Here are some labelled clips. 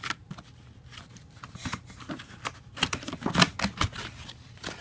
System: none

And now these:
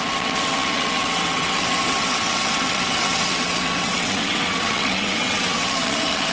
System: vocoder, WaveNeXt